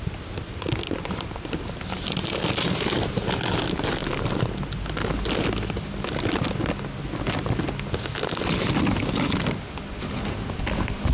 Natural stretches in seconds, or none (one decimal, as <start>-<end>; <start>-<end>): 0.0-11.1